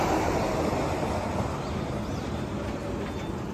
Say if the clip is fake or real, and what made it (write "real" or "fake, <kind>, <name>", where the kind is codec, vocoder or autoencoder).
real